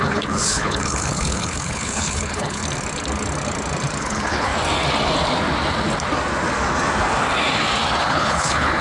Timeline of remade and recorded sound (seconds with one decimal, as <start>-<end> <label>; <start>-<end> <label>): 0.0-2.6 remade; 2.6-4.0 recorded; 4.0-4.5 remade; 4.5-8.0 recorded; 8.0-8.8 remade